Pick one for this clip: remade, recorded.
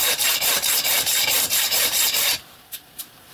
remade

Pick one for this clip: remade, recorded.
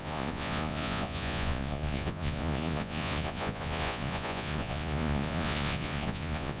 remade